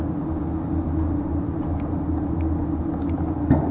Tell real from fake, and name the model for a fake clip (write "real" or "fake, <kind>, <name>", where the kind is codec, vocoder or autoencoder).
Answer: real